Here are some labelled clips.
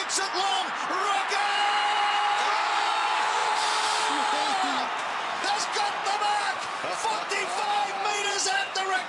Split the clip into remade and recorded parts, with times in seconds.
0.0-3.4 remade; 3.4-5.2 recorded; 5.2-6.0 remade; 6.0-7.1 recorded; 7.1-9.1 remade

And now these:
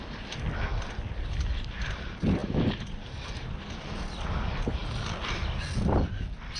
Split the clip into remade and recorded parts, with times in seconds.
0.0-6.6 recorded

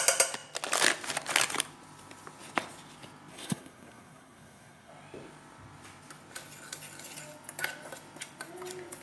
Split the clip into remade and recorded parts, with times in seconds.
0.0-3.3 recorded; 3.3-4.9 remade; 4.9-9.0 recorded